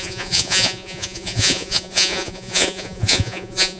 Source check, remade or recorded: remade